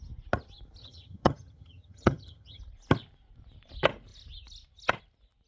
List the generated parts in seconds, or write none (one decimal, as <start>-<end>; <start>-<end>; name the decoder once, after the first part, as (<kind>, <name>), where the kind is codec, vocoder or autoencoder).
0.8-2.6 (vocoder, HiFi-GAN)